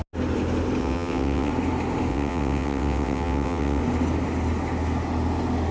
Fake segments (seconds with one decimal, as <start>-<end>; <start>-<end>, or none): 0.8-1.5; 2.1-3.8